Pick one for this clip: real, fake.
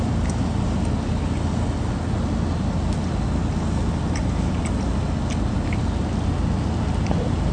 real